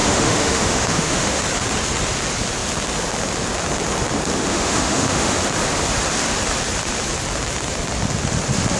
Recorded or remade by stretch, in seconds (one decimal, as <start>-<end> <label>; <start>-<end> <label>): 0.0-1.4 remade; 1.4-4.5 recorded; 4.5-5.4 remade; 5.4-8.8 recorded